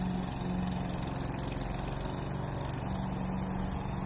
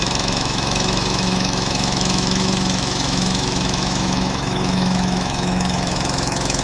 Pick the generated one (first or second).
second